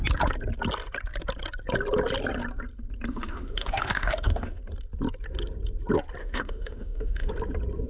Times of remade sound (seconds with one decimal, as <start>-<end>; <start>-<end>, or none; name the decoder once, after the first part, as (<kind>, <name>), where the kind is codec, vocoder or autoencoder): 3.1-4.6 (autoencoder, DAC-VAE); 6.2-7.3